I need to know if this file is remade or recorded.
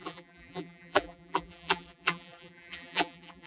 remade